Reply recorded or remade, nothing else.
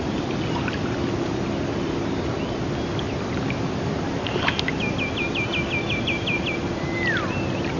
recorded